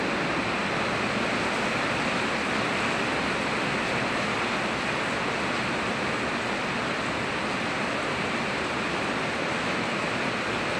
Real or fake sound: real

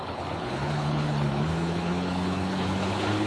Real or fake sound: fake